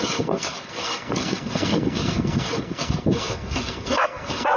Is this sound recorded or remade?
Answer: remade